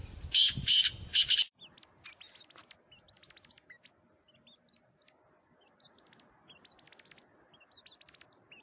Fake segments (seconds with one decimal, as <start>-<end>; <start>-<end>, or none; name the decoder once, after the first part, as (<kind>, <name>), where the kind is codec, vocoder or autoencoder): none